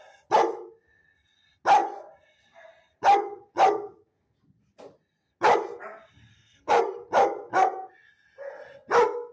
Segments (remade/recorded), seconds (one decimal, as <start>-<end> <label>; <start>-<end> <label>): 0.0-6.3 recorded; 6.3-6.8 remade; 6.8-9.3 recorded